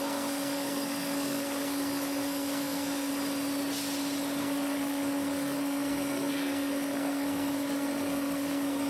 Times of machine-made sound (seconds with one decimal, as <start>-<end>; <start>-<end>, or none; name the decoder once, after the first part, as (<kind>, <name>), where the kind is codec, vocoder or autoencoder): 0.0-3.1 (codec, SNAC); 4.4-8.9